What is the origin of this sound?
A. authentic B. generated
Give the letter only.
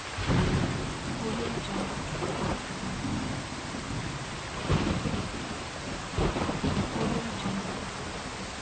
A